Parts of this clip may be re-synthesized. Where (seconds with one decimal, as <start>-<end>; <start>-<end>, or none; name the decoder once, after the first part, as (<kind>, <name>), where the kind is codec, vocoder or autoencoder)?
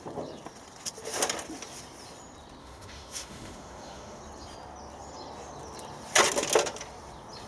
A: 2.6-4.2 (autoencoder, DAC-VAE)